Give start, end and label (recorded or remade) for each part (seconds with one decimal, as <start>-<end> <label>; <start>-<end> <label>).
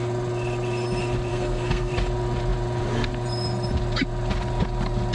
0.0-1.3 recorded; 1.3-1.9 remade; 1.9-5.1 recorded